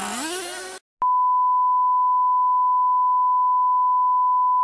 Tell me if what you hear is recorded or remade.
recorded